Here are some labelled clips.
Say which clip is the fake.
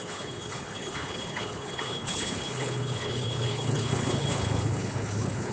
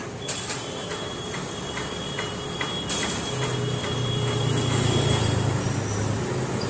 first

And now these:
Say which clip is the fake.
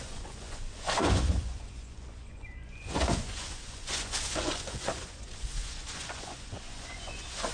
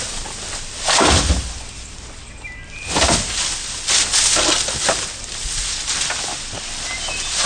first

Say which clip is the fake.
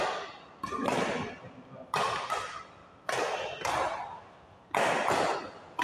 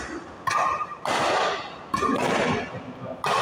first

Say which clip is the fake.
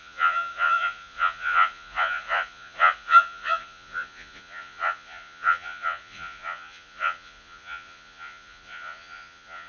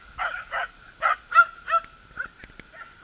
first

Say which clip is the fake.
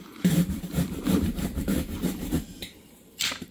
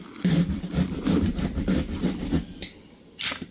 first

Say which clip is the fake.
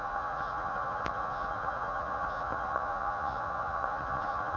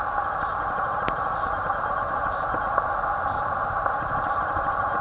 first